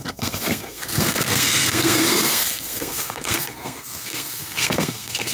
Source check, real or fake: fake